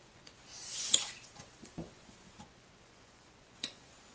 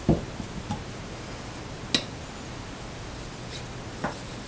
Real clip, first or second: second